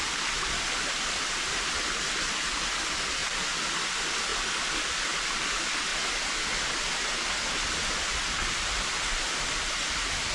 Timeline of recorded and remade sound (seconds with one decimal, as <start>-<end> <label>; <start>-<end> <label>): 0.0-10.3 recorded